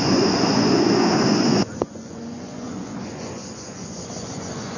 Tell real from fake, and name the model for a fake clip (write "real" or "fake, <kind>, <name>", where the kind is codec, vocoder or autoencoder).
fake, vocoder, Vocos